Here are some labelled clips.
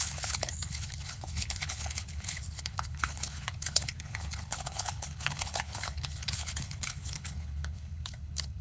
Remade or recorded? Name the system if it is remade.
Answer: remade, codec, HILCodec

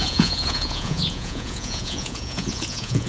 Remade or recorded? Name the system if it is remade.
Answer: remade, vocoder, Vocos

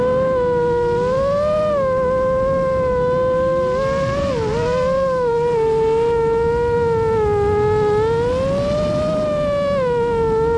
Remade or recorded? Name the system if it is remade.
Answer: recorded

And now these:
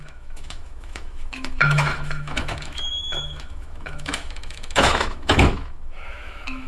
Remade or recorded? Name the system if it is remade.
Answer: remade, autoencoder, DAC-VAE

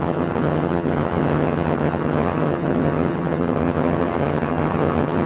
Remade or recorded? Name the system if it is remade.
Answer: remade, vocoder, HiFi-GAN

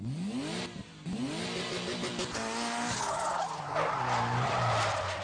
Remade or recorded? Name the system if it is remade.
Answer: recorded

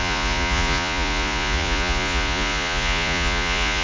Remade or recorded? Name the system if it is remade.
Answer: remade, vocoder, Vocos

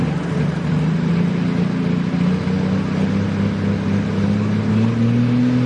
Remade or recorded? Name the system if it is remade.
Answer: recorded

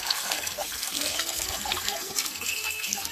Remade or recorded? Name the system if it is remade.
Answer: remade, codec, SNAC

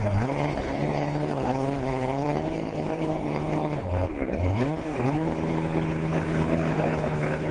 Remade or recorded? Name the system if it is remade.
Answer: remade, codec, HILCodec